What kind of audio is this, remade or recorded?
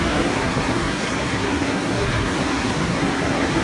remade